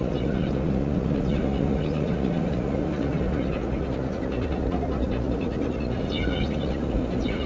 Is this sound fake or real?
fake